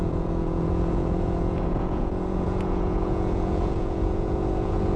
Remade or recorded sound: remade